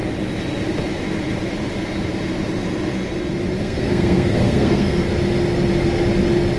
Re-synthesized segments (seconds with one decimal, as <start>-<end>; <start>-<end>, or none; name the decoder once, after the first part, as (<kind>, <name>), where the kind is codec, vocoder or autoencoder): 3.6-5.1 (codec, SNAC)